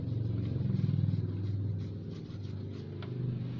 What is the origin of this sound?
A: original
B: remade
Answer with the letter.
A